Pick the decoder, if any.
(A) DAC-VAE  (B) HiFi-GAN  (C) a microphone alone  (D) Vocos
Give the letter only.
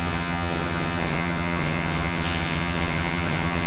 B